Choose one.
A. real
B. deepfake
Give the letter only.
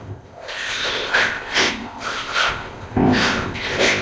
B